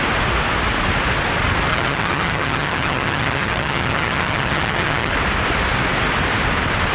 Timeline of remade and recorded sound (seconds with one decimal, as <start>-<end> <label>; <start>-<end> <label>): 0.0-1.7 recorded; 1.7-5.1 remade; 5.1-6.9 recorded